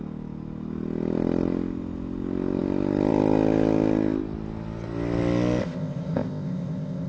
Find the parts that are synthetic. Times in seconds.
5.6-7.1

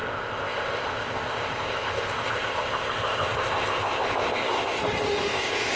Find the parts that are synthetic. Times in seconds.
0.0-4.8; 5.3-5.8

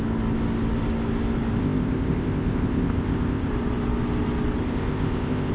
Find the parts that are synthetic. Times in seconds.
1.6-3.5; 4.6-5.5

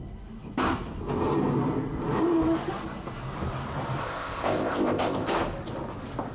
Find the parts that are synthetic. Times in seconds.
4.0-5.3

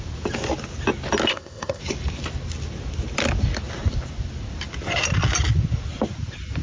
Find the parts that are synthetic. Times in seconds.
1.3-1.8